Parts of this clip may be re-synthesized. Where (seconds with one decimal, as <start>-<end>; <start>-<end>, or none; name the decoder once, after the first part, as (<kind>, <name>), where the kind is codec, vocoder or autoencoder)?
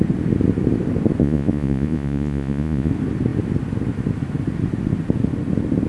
1.2-2.9 (vocoder, Vocos)